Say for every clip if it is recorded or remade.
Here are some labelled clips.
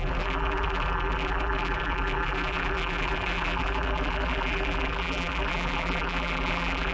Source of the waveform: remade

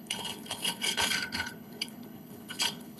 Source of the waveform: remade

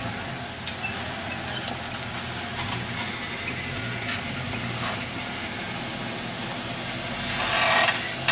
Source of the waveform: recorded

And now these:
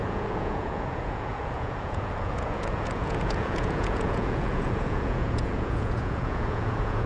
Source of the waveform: remade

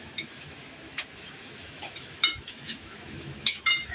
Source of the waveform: remade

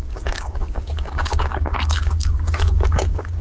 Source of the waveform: remade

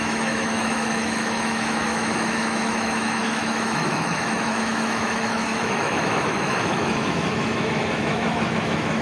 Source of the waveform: remade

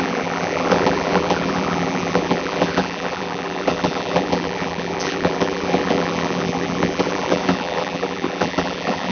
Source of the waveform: remade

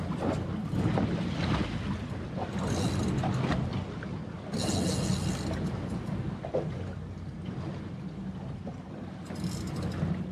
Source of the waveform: recorded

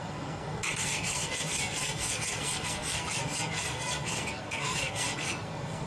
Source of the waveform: remade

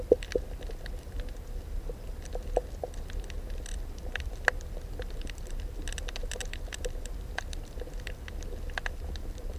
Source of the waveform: recorded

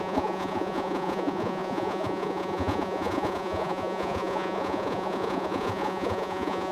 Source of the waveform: remade